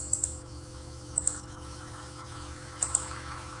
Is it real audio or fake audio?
fake